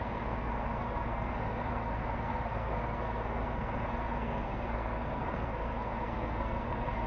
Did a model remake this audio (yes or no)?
yes